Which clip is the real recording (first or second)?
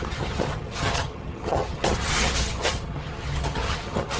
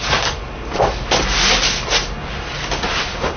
second